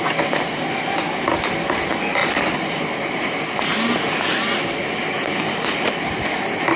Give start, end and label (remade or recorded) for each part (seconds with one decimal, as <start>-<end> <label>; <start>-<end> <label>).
0.0-2.2 recorded; 2.2-6.3 remade; 6.3-6.8 recorded